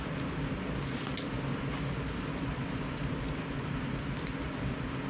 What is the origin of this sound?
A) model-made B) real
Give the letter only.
B